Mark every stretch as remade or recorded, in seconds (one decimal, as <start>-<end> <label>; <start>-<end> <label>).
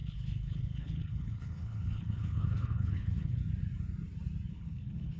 0.0-3.4 remade; 3.4-4.5 recorded; 4.5-5.2 remade